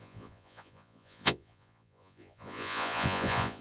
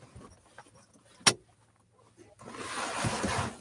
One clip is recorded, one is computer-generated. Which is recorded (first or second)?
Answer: second